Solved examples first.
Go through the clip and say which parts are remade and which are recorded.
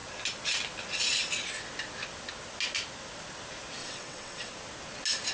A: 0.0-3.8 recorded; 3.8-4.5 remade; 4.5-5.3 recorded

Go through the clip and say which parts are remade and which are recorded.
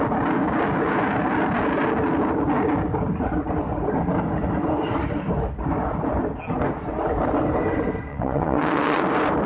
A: 0.0-8.1 recorded; 8.1-9.0 remade; 9.0-9.5 recorded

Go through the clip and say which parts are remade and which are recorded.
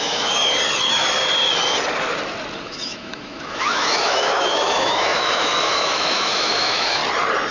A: 0.0-0.4 remade; 0.4-2.6 recorded; 2.6-7.0 remade; 7.0-7.5 recorded